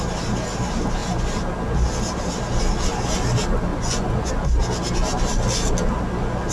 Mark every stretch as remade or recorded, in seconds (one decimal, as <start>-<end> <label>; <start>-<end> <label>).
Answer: 0.0-3.7 recorded; 3.7-4.3 remade; 4.3-6.5 recorded